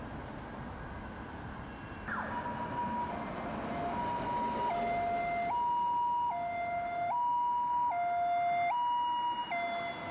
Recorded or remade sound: recorded